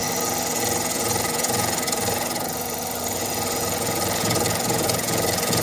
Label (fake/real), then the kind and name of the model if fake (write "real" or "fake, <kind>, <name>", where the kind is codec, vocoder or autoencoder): fake, vocoder, Vocos